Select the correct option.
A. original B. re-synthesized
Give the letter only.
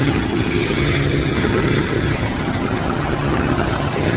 B